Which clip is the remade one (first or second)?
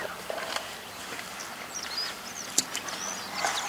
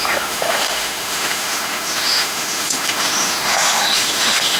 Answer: second